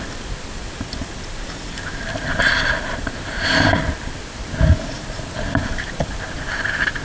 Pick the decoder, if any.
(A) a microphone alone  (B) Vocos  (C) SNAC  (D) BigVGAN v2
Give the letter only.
A